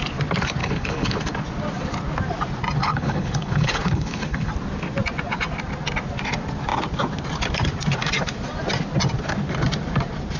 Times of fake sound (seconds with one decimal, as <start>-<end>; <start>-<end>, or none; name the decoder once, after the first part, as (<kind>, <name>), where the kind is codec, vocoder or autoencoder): 0.6-1.2 (codec, HILCodec); 2.8-4.5

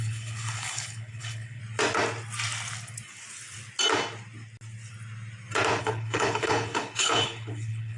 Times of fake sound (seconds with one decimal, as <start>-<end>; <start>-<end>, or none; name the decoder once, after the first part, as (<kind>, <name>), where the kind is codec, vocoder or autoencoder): 0.0-1.6 (codec, HILCodec); 5.8-8.0

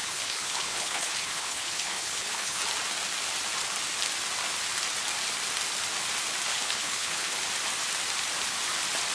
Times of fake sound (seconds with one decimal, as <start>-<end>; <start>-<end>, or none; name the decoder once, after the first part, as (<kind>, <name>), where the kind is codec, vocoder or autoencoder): 0.0-2.6 (codec, HILCodec); 6.5-7.4

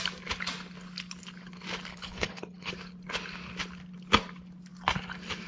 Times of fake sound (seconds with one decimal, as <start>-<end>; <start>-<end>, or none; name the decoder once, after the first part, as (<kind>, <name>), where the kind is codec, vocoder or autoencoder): 1.9-2.7 (codec, HILCodec)

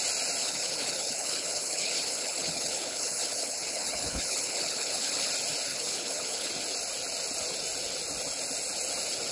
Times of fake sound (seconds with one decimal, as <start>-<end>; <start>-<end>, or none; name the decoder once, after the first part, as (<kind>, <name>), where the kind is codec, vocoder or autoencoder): 0.4-5.3 (codec, HILCodec); 5.7-6.5